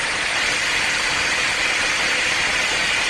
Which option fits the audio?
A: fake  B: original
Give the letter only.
B